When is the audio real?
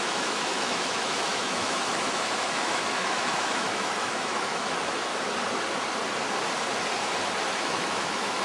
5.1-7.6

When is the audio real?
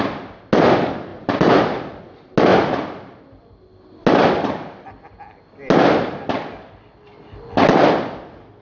0.0-8.6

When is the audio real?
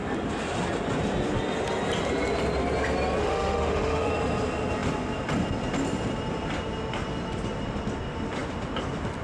0.0-3.2; 4.1-9.2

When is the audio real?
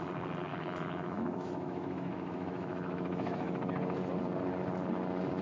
0.0-0.5; 3.7-5.4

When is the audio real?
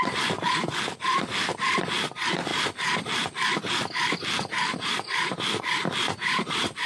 0.0-6.9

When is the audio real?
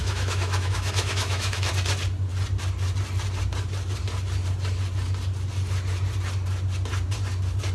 1.7-7.7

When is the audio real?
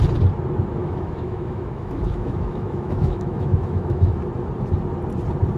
0.0-0.8; 4.2-5.6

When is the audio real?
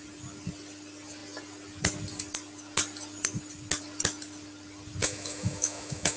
0.0-5.0